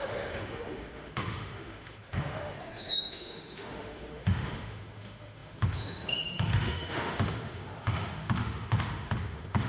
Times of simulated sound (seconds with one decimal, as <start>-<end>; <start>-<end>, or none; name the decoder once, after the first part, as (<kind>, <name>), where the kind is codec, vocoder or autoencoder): 0.0-9.7 (autoencoder, DAC-VAE)